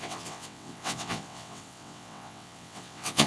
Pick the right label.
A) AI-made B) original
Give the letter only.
A